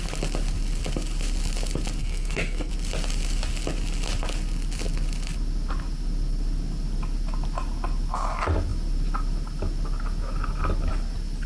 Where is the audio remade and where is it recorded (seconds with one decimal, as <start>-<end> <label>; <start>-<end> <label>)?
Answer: 0.0-2.0 recorded; 2.0-2.7 remade; 2.7-11.5 recorded